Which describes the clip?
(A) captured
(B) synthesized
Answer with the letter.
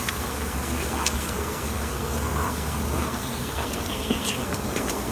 B